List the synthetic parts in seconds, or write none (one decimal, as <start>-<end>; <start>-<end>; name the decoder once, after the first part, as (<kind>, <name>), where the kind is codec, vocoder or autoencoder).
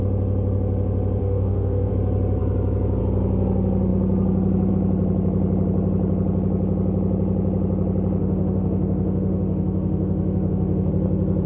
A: 1.2-1.9 (autoencoder, DAC-VAE); 8.2-10.9